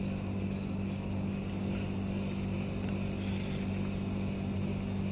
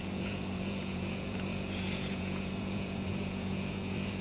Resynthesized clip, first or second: second